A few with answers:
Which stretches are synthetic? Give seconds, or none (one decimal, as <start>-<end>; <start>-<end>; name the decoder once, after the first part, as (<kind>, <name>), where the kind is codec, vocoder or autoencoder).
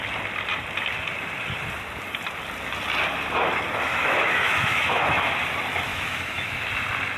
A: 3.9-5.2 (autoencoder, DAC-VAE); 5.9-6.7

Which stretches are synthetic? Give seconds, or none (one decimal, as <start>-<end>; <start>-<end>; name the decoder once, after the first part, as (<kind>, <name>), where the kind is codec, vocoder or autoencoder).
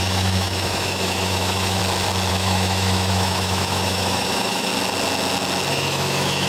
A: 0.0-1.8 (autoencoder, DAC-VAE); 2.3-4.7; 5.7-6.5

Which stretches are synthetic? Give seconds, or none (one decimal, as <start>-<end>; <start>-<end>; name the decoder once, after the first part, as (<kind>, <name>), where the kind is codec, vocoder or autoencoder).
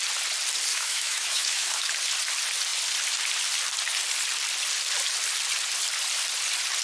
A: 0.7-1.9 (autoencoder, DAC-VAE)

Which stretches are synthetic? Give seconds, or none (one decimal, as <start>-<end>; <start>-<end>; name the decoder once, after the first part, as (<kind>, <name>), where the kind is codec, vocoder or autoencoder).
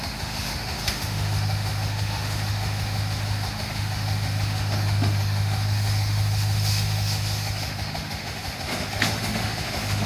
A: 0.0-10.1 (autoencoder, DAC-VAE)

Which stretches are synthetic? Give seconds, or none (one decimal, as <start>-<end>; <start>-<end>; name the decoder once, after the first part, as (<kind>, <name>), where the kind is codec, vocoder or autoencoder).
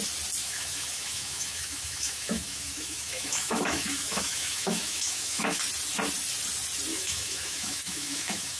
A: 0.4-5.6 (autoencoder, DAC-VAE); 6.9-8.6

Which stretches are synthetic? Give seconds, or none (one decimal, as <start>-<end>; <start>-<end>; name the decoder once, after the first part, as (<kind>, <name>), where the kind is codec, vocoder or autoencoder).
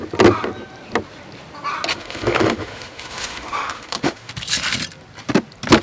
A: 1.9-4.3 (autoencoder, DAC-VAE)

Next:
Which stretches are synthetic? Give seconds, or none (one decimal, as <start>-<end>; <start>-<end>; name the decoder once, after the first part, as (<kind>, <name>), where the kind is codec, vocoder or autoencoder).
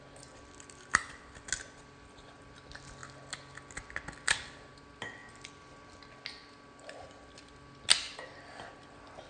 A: none